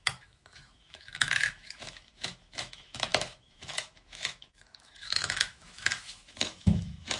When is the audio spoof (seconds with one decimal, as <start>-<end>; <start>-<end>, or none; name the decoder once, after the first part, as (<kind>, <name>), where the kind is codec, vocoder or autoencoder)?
0.0-7.2 (autoencoder, DAC-VAE)